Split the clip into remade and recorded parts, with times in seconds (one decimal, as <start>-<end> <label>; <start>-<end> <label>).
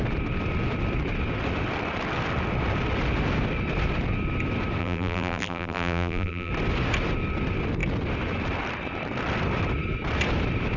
0.0-4.8 recorded; 4.8-6.5 remade; 6.5-10.8 recorded